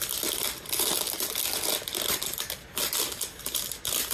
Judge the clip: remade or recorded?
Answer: recorded